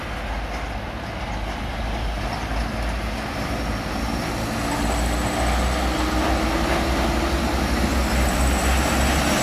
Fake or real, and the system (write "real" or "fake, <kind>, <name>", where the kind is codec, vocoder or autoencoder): real